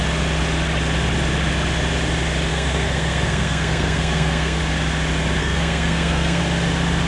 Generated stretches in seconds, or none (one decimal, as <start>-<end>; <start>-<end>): 2.5-4.6; 5.4-6.4